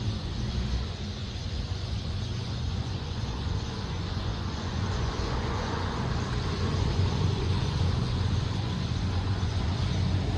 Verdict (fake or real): fake